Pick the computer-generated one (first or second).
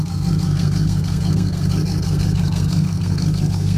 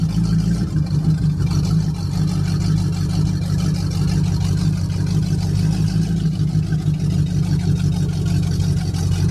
first